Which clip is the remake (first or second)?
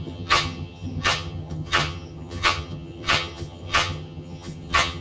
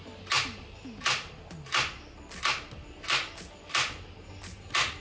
first